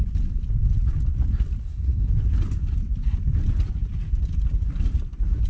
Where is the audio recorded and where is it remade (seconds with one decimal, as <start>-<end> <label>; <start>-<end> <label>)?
0.0-1.6 recorded; 1.6-2.1 remade; 2.1-5.5 recorded